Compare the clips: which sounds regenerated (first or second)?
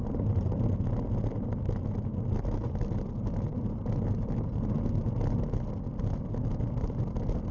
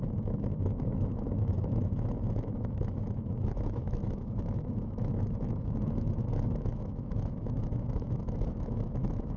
second